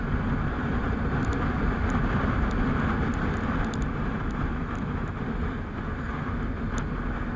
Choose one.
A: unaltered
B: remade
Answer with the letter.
A